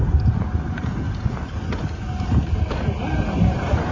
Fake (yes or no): yes